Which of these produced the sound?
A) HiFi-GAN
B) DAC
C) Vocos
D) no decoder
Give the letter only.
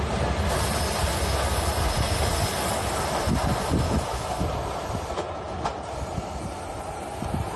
D